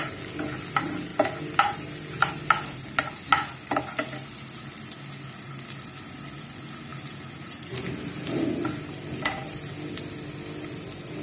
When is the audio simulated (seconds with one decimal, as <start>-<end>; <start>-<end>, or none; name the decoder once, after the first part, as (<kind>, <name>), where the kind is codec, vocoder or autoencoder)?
none